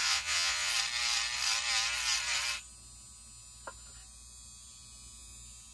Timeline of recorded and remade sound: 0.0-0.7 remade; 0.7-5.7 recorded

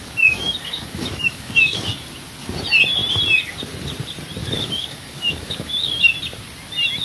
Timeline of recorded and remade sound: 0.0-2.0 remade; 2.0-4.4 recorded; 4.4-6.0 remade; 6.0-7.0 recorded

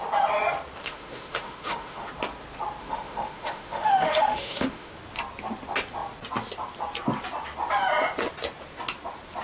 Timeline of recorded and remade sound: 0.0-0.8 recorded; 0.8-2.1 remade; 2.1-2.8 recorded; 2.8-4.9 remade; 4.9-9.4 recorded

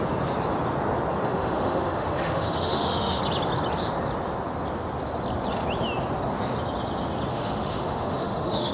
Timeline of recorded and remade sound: 0.0-1.1 recorded; 1.1-3.2 remade; 3.2-7.3 recorded; 7.3-8.7 remade

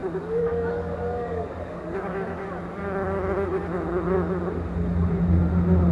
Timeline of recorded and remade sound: 0.0-2.4 remade; 2.4-5.9 recorded